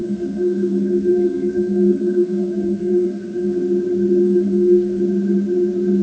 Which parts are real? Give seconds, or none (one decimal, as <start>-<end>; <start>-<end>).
3.6-4.2; 5.0-6.0